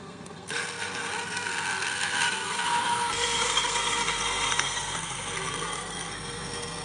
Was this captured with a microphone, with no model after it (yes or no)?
no